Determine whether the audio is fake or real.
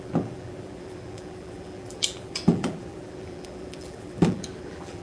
fake